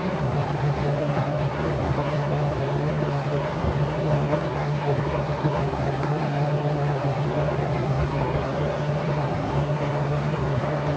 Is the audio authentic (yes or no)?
no